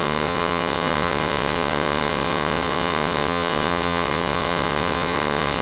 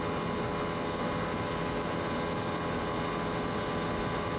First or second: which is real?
second